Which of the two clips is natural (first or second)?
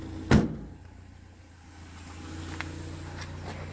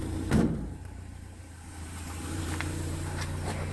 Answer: first